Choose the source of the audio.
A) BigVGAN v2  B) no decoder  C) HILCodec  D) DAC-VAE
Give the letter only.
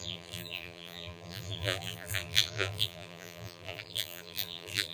A